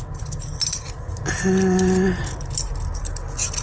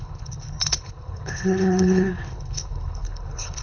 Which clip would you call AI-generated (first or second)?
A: second